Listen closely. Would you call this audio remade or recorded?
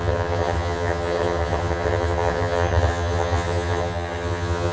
remade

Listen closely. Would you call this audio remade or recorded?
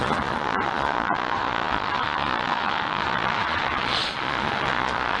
remade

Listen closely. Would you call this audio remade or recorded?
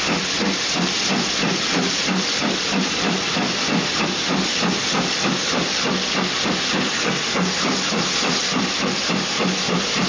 remade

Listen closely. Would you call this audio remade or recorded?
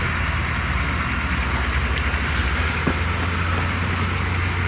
recorded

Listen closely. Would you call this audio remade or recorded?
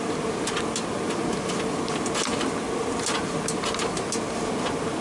recorded